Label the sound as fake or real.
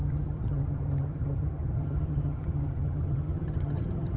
fake